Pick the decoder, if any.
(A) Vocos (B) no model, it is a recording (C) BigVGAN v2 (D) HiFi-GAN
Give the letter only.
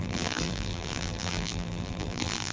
C